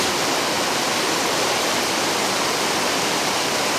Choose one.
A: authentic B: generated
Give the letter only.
A